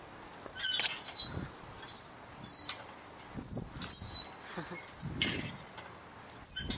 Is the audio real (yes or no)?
yes